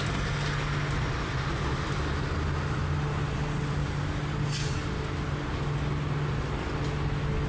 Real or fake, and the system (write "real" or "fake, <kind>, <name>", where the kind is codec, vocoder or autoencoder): real